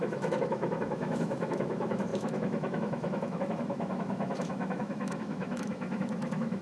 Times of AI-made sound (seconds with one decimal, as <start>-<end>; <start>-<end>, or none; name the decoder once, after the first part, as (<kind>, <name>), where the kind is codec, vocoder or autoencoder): 0.0-6.6 (autoencoder, DAC-VAE)